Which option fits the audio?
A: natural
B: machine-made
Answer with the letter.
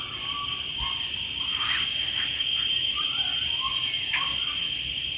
A